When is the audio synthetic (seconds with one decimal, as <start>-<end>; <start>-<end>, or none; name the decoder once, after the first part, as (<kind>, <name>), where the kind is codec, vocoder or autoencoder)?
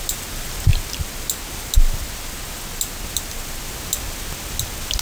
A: none